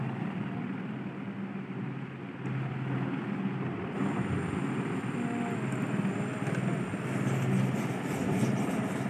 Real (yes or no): yes